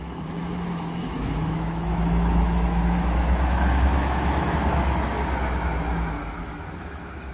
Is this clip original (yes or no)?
no